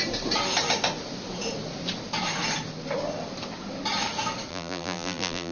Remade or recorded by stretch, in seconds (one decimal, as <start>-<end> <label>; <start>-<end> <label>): 0.0-4.5 recorded; 4.5-5.5 remade